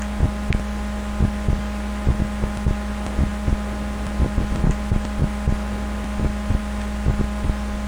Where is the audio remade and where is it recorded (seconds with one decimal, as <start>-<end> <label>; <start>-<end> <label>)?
0.0-7.9 recorded

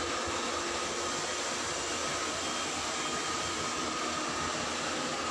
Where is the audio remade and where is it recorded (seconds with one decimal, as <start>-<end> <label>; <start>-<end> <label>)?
0.0-5.3 recorded

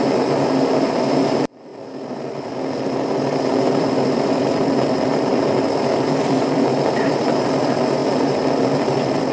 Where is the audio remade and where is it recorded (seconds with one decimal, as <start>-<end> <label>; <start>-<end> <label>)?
0.0-1.7 remade; 1.7-3.4 recorded; 3.4-9.3 remade

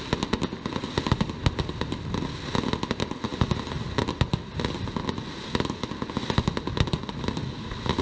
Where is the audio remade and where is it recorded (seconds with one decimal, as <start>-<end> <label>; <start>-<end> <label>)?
0.0-8.0 recorded

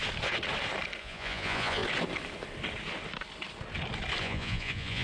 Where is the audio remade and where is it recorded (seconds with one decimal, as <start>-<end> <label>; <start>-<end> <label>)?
0.0-1.0 recorded; 1.0-1.8 remade; 1.8-4.2 recorded; 4.2-5.0 remade

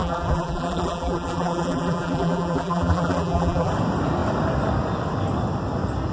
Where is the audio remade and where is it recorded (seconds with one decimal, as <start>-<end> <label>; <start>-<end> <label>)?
0.0-3.7 remade; 3.7-6.1 recorded